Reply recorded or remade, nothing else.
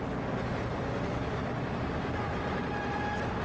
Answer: recorded